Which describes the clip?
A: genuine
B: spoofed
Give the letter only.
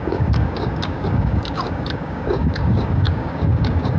B